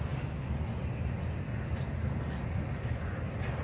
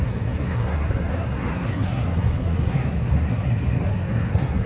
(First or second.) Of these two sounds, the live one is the first